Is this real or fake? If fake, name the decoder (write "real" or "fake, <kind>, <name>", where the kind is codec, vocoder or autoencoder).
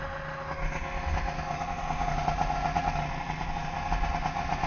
real